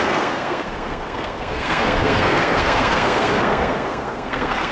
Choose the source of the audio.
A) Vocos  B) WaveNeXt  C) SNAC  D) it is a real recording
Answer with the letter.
C